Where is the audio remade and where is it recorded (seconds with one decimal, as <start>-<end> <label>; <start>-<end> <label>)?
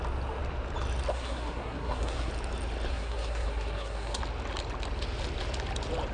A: 0.0-1.1 recorded; 1.1-2.3 remade; 2.3-2.9 recorded; 2.9-4.2 remade; 4.2-6.1 recorded